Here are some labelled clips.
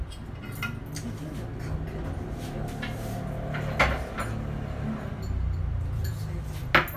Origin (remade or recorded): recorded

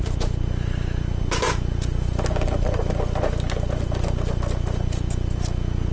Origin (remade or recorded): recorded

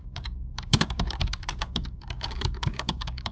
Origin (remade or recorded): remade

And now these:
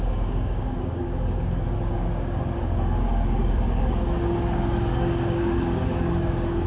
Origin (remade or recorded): remade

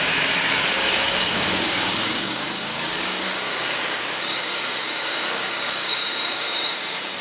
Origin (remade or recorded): remade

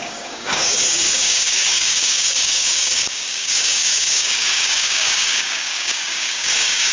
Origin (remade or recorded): remade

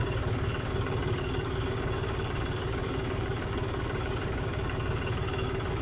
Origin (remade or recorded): remade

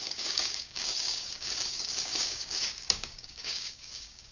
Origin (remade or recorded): remade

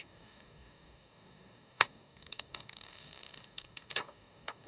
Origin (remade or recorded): remade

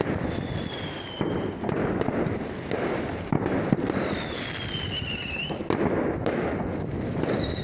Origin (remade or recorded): recorded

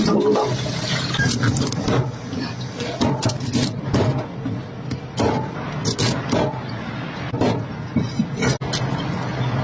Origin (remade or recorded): recorded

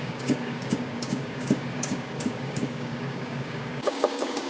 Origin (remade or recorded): remade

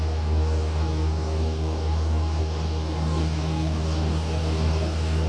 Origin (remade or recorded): remade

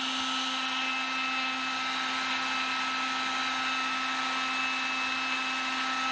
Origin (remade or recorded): recorded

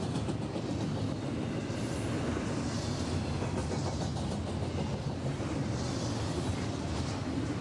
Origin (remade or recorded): recorded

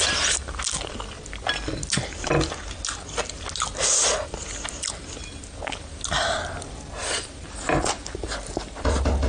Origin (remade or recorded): recorded